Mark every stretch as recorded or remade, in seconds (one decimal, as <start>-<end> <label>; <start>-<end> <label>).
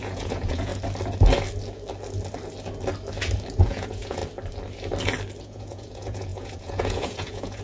0.0-0.7 remade; 0.7-3.6 recorded; 3.6-4.2 remade; 4.2-5.4 recorded; 5.4-7.6 remade